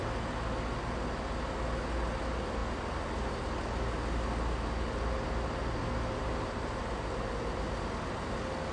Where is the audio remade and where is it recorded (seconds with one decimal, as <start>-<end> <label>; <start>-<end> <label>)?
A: 0.0-8.7 recorded